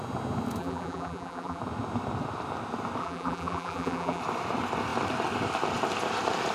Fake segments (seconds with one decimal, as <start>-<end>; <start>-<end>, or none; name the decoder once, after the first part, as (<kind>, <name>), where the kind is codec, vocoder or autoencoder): 0.6-1.6 (vocoder, BigVGAN v2); 3.0-4.2